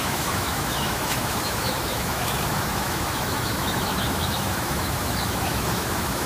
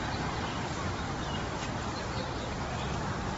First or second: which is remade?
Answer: first